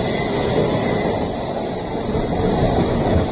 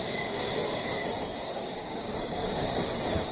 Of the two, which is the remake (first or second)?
second